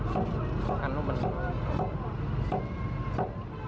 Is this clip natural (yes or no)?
yes